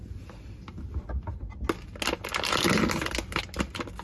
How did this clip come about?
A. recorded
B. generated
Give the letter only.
A